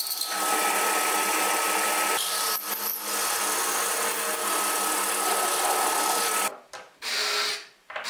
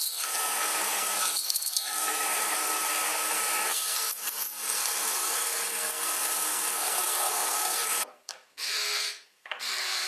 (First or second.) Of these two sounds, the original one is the first